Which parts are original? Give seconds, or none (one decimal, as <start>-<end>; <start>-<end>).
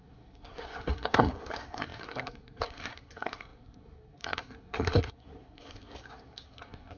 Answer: none